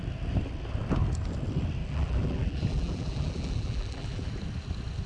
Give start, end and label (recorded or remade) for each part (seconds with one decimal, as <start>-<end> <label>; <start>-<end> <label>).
0.0-1.8 recorded; 1.8-4.3 remade; 4.3-5.1 recorded